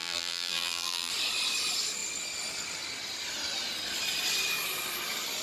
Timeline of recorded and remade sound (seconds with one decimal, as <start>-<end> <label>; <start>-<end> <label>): 0.0-1.1 remade; 1.1-5.4 recorded